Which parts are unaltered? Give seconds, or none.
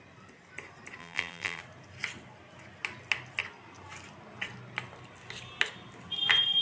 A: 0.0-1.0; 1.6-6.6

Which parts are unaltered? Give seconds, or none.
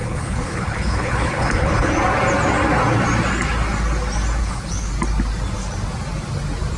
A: 1.9-4.4; 4.9-6.8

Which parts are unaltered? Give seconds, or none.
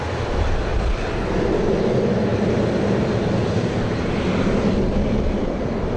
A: 0.0-6.0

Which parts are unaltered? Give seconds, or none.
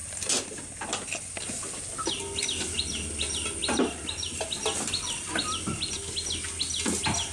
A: 0.0-7.3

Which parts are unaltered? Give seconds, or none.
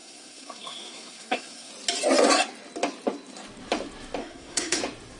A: 1.7-4.2; 4.8-5.2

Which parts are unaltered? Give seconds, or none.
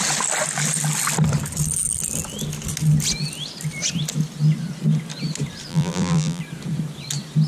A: 0.0-5.7; 6.4-7.5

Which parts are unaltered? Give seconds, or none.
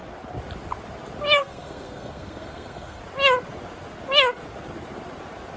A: 0.0-1.4; 3.0-5.6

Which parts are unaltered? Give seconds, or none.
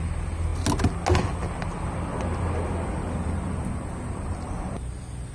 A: 0.0-5.3